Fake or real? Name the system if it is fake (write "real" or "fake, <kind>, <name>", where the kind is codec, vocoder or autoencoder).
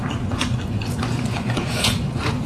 fake, vocoder, Vocos